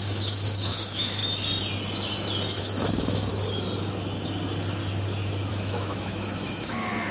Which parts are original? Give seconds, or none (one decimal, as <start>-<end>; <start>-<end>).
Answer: 1.2-2.6; 3.3-5.5